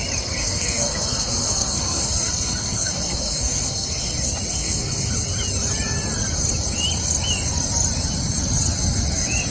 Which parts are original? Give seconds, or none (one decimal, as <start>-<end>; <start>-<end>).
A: 0.0-0.4; 4.1-4.5; 5.1-9.5